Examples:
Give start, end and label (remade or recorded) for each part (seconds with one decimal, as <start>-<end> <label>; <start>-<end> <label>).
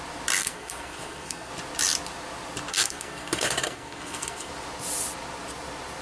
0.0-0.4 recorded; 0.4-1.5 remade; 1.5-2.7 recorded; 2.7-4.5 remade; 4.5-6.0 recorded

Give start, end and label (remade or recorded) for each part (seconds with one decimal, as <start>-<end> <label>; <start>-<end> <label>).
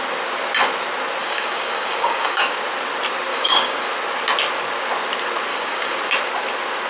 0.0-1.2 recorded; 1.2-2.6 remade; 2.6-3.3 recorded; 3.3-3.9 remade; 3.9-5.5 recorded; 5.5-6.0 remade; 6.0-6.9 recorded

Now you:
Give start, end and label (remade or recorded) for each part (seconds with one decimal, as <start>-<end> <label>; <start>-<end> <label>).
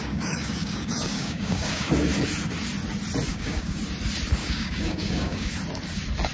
0.0-1.9 remade; 1.9-3.3 recorded; 3.3-3.8 remade; 3.8-4.4 recorded; 4.4-5.5 remade; 5.5-6.3 recorded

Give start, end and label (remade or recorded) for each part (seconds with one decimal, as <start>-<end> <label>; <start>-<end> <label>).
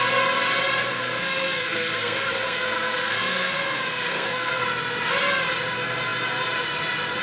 0.0-1.0 recorded; 1.0-4.5 remade; 4.5-7.2 recorded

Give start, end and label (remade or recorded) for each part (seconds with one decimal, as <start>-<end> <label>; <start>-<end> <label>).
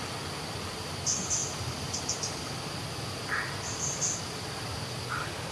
0.0-5.5 recorded